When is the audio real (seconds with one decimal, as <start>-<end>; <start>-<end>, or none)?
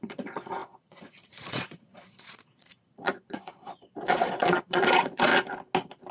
5.3-6.1